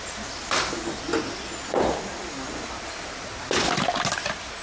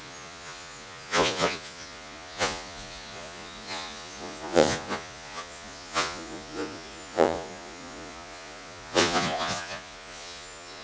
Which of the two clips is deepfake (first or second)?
second